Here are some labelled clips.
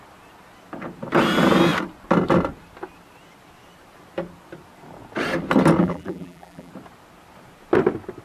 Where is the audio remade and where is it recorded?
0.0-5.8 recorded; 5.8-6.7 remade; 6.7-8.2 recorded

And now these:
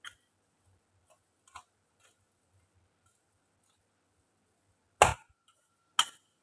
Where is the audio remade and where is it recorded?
0.0-6.4 recorded

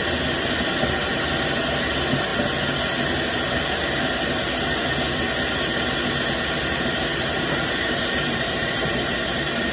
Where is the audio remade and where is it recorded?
0.0-0.7 recorded; 0.7-2.3 remade; 2.3-6.5 recorded; 6.5-9.7 remade

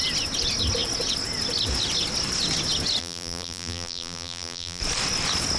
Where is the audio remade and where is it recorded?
0.0-3.0 recorded; 3.0-4.8 remade; 4.8-5.6 recorded